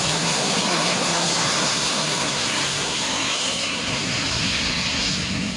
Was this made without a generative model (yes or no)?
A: no